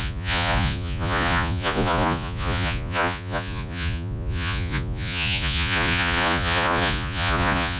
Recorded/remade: remade